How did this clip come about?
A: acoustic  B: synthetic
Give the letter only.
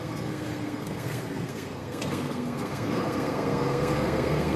B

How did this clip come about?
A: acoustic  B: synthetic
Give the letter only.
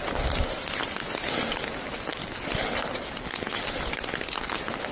A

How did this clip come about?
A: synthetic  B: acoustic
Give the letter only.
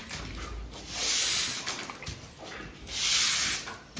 B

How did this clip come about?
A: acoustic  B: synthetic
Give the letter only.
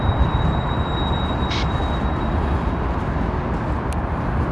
A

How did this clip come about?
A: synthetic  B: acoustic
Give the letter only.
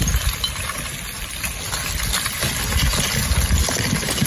B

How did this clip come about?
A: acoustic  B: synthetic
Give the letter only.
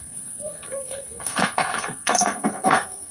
B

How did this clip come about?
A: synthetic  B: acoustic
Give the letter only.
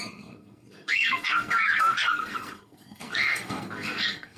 A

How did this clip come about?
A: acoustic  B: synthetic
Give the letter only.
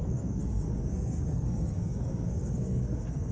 B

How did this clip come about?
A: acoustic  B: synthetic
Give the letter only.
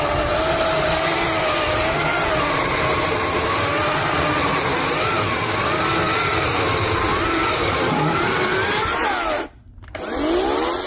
A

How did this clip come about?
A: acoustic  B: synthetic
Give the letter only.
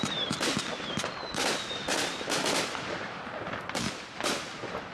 A